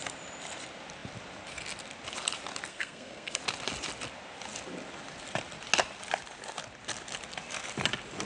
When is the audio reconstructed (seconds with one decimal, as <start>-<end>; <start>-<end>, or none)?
2.7-3.4